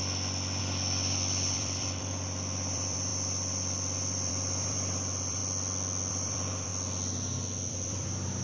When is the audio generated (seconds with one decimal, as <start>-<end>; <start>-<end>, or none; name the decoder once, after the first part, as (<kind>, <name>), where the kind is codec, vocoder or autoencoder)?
0.6-5.4 (vocoder, BigVGAN v2); 6.1-6.7; 7.7-8.4